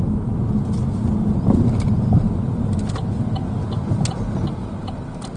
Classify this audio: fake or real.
real